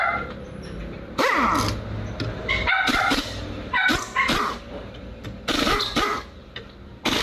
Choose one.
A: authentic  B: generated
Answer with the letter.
A